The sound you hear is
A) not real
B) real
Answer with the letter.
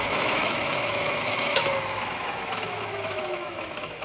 A